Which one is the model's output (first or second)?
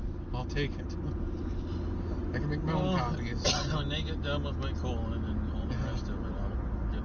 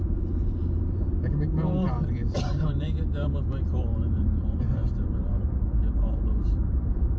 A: second